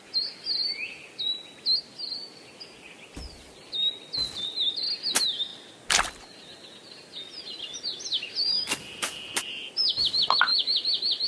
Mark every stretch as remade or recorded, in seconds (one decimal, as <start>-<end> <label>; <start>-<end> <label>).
0.0-11.3 recorded